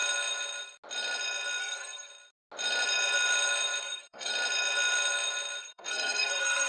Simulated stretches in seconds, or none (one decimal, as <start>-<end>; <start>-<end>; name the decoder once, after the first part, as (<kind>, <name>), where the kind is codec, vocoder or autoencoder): 1.6-2.1 (codec, SNAC); 3.8-4.3; 5.6-6.7